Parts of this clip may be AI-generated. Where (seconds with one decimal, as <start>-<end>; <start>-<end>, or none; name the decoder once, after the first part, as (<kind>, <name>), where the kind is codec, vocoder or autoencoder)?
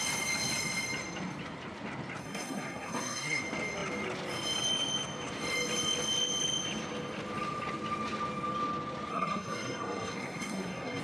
2.2-3.4 (codec, SNAC); 9.1-11.0